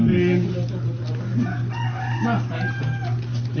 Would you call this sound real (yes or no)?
yes